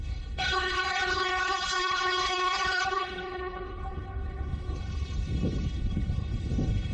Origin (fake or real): fake